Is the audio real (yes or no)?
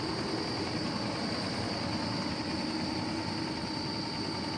yes